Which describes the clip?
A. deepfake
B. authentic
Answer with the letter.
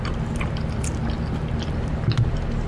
B